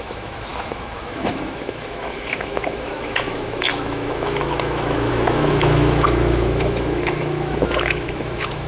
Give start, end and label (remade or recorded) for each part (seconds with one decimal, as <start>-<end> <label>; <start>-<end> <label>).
0.0-8.7 remade

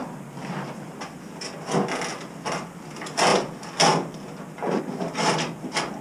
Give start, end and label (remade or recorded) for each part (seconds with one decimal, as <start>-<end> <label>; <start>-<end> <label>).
0.0-6.0 recorded

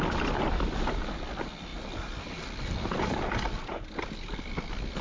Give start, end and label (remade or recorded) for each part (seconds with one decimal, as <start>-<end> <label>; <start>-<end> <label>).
0.0-5.0 recorded

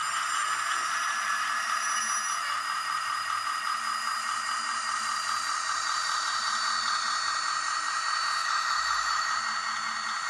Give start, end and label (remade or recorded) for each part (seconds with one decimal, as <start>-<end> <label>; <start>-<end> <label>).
0.0-8.4 recorded; 8.4-9.3 remade; 9.3-10.3 recorded

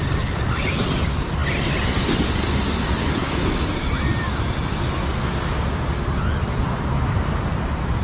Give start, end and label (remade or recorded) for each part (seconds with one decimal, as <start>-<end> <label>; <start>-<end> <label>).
0.0-8.0 recorded

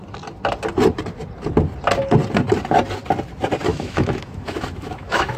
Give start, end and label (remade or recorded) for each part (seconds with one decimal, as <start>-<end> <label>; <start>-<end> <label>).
0.0-3.7 recorded; 3.7-5.4 remade

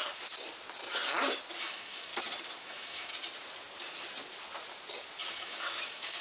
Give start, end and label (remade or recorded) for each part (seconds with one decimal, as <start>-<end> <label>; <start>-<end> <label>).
0.0-1.6 recorded; 1.6-2.1 remade; 2.1-2.6 recorded; 2.6-3.1 remade; 3.1-5.3 recorded; 5.3-6.2 remade